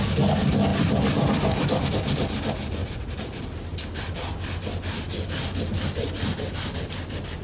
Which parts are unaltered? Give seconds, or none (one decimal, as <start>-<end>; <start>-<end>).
0.0-2.8; 3.4-7.4